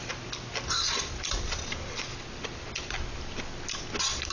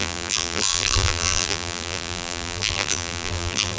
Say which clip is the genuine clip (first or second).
first